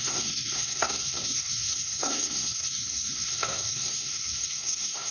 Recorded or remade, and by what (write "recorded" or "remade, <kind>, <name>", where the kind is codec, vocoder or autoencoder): remade, codec, SNAC